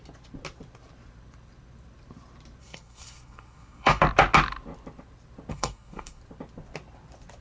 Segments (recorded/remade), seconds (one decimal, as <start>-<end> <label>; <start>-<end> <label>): 0.0-2.6 recorded; 2.6-4.0 remade; 4.0-5.5 recorded; 5.5-6.2 remade; 6.2-7.4 recorded